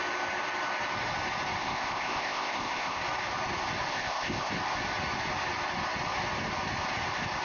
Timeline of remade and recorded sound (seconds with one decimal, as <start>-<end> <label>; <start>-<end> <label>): 0.0-1.6 recorded; 1.6-3.0 remade; 3.0-3.9 recorded; 3.9-4.5 remade; 4.5-7.4 recorded